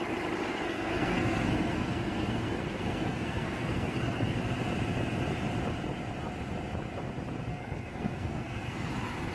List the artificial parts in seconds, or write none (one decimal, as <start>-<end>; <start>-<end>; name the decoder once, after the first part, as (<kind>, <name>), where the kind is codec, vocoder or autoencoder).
0.5-4.4 (codec, SNAC); 7.5-8.9